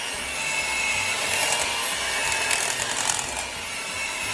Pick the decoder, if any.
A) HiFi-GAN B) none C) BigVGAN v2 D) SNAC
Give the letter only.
B